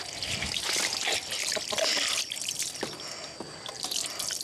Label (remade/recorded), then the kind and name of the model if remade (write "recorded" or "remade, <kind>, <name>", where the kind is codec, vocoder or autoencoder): recorded